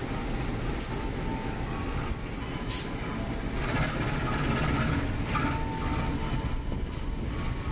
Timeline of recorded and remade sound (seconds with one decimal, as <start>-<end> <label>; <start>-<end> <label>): 0.0-7.7 recorded